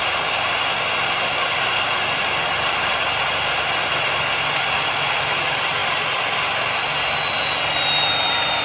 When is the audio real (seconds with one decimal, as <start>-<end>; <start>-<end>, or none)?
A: 0.0-1.3; 1.9-8.6

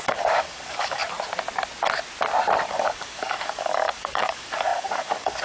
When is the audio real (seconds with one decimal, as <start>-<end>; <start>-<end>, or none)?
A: 1.0-2.7